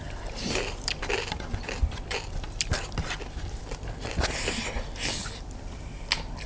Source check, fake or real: fake